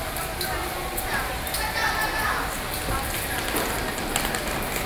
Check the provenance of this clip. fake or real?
real